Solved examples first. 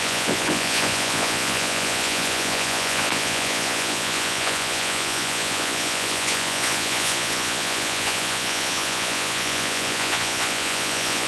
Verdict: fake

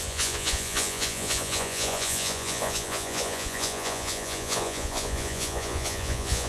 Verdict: fake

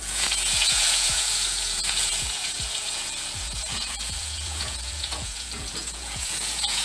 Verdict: fake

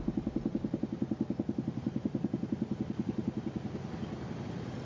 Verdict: real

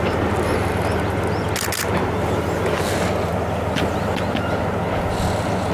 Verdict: real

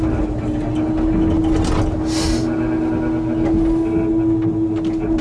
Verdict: real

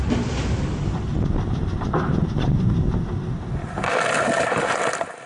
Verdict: real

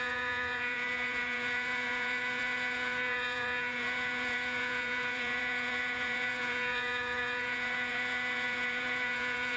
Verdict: fake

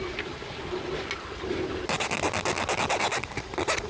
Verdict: real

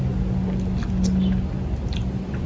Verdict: real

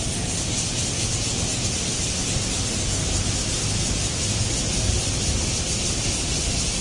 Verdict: real